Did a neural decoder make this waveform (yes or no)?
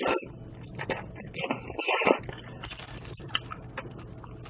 no